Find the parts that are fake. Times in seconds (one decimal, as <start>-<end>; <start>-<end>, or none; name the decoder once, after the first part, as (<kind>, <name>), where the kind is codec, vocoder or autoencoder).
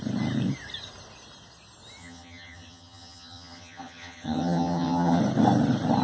2.0-5.2 (vocoder, HiFi-GAN)